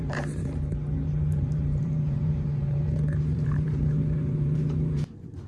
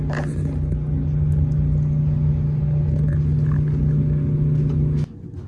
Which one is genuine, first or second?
second